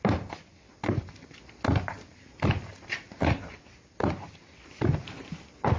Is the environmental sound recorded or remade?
recorded